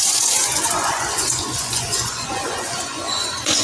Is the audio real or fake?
fake